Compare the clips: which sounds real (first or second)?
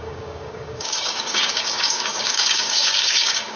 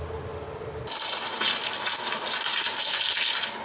second